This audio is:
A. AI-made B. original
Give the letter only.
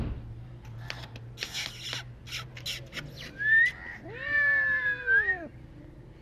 B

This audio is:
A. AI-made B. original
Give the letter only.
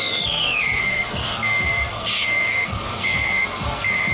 A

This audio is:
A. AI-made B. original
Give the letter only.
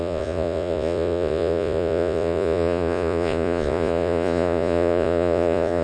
A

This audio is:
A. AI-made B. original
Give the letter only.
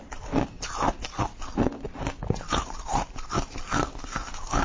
B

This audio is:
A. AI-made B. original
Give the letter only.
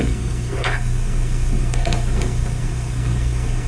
A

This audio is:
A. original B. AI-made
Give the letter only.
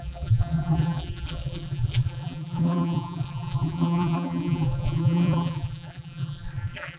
B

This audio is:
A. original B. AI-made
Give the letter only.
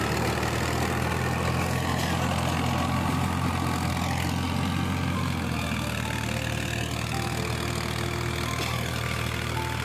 A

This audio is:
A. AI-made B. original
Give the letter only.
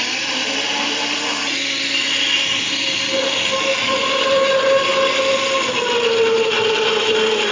B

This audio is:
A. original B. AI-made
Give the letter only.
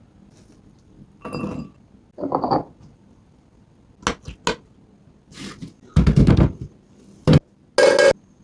A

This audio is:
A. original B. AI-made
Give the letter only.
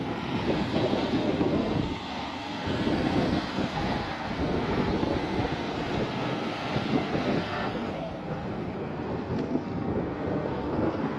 B